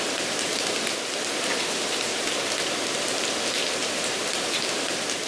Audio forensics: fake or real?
real